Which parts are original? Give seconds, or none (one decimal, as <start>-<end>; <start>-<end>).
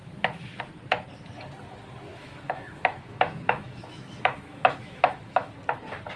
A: 0.6-2.1; 5.6-6.2